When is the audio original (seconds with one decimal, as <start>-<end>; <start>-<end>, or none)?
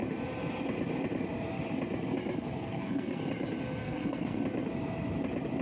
0.0-2.6; 3.2-3.8; 4.4-5.6